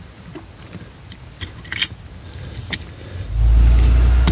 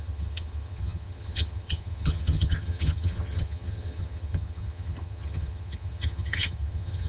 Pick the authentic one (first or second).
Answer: first